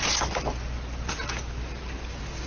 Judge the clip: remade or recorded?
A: recorded